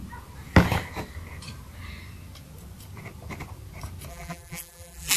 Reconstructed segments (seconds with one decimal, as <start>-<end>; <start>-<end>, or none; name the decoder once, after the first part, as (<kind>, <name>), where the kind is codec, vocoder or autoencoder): 4.1-5.2 (vocoder, BigVGAN v2)